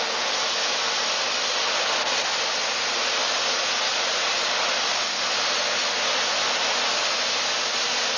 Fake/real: real